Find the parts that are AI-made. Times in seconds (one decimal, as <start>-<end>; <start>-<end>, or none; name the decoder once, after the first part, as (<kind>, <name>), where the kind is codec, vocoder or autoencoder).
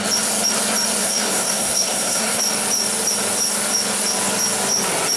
1.0-2.4 (codec, SNAC)